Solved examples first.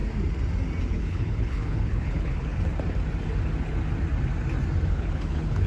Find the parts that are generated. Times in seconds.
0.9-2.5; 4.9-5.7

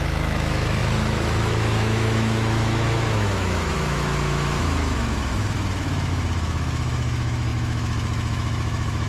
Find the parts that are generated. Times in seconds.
0.0-9.1

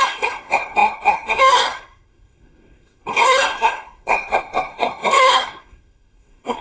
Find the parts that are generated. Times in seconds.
0.0-6.6